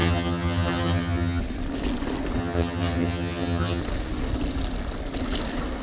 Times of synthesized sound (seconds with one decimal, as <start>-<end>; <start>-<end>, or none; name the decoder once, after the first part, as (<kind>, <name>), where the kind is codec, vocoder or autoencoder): 0.0-1.4 (vocoder, HiFi-GAN); 2.4-3.8